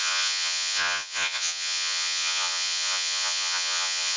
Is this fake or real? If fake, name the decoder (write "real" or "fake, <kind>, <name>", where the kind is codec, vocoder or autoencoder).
fake, vocoder, Vocos